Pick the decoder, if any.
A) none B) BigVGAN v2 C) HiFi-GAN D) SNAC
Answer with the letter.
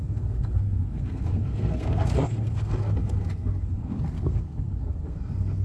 D